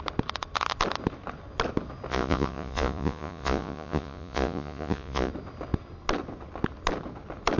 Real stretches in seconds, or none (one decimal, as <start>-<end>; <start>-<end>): 0.0-2.1; 5.3-7.6